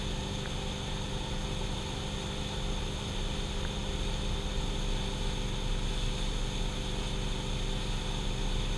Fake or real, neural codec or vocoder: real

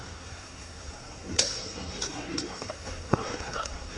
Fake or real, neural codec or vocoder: fake, codec, SNAC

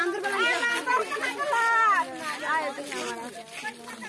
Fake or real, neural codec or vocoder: real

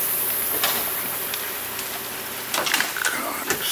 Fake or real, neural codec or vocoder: real